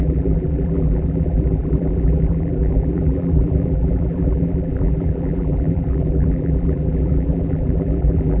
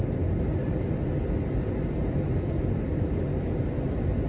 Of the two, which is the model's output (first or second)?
first